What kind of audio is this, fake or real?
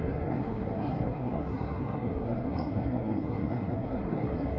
fake